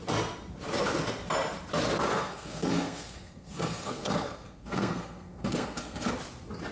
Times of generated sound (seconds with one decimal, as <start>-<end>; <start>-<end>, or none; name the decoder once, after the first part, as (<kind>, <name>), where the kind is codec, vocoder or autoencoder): 2.1-6.1 (codec, SNAC)